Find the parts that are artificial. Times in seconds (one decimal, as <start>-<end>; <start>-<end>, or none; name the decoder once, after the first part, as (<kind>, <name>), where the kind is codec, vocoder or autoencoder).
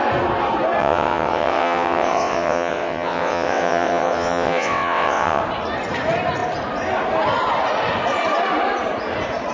0.8-5.4 (vocoder, WaveNeXt)